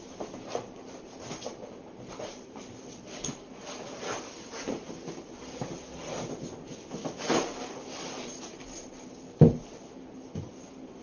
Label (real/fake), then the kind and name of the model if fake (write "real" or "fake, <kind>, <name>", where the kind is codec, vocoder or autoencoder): real